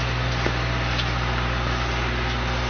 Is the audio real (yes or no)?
yes